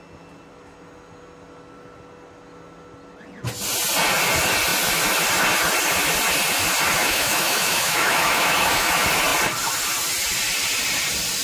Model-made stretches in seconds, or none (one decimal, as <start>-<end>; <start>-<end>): 7.0-8.9